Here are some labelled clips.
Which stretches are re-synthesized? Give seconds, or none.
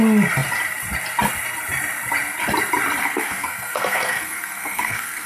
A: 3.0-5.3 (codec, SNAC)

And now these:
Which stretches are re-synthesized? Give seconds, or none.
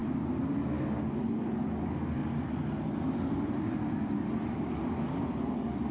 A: 2.2-5.9 (vocoder, BigVGAN v2)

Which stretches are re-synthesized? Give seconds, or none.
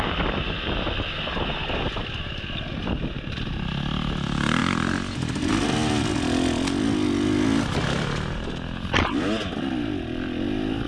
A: none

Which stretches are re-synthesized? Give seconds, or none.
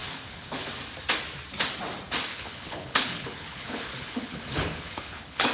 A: 0.0-0.7 (codec, HILCodec); 2.3-5.5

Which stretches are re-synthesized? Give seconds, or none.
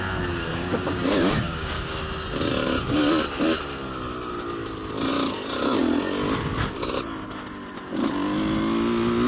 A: 0.5-2.0 (codec, DAC)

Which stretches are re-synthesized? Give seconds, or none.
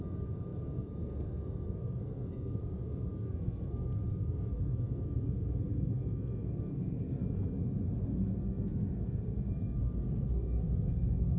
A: 0.0-7.2 (codec, SNAC); 8.0-11.4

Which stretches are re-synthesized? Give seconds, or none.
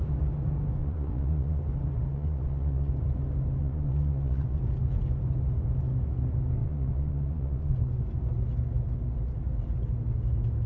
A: 0.8-1.6 (vocoder, Vocos); 2.1-2.9; 3.6-4.6; 6.6-8.0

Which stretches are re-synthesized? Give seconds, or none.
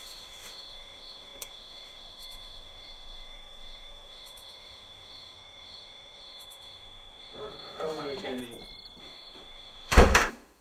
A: 0.0-8.4 (autoencoder, DAC-VAE); 9.0-10.6